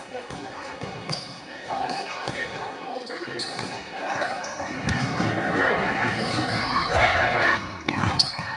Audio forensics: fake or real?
fake